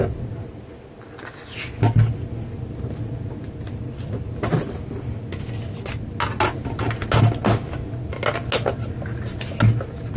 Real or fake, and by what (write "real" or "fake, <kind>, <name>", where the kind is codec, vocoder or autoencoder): real